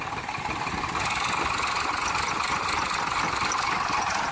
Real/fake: real